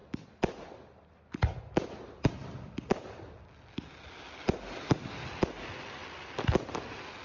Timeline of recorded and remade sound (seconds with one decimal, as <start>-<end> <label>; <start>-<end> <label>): 0.0-7.2 recorded